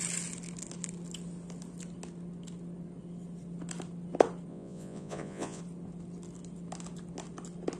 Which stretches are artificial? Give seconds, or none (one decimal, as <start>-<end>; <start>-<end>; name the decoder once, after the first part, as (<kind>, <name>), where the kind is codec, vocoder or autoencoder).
4.5-5.6 (vocoder, Vocos)